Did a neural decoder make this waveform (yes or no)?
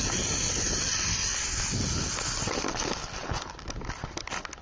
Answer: no